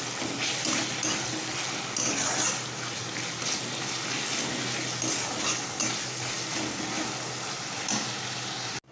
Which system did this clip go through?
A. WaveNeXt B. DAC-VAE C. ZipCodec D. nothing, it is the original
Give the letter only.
D